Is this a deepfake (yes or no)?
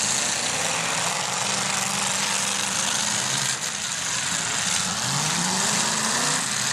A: no